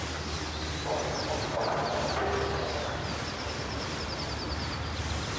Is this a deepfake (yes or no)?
no